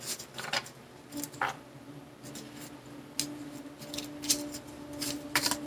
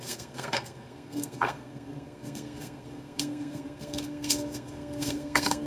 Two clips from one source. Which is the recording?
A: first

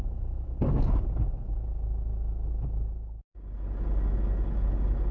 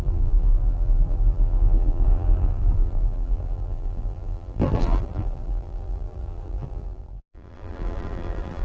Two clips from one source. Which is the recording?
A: first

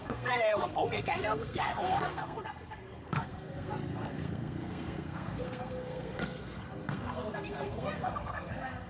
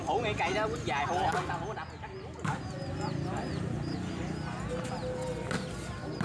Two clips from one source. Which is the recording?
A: second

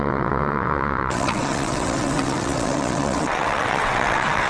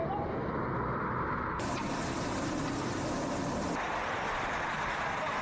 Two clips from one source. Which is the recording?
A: second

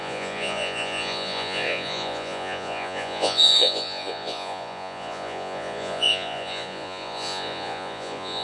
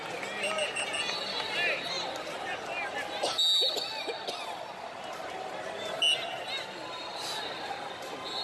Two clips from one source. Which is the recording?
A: second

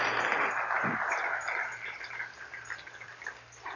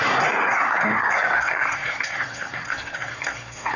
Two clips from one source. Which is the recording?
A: first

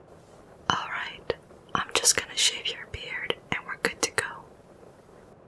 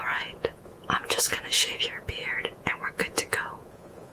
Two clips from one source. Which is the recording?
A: first